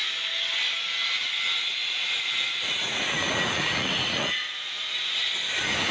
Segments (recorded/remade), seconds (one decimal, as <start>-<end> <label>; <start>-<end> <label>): 0.0-1.8 recorded; 1.8-5.3 remade; 5.3-5.9 recorded